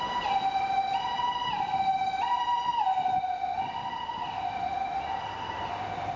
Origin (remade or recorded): recorded